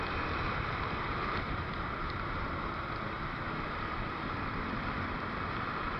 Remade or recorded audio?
recorded